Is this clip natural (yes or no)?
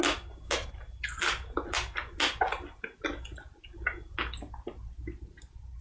yes